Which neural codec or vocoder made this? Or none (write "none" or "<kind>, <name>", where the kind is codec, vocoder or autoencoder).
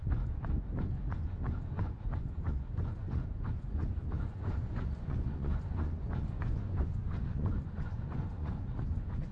vocoder, Vocos